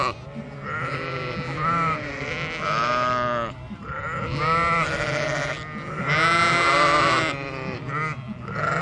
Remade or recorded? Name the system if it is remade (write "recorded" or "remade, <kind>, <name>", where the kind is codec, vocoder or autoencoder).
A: recorded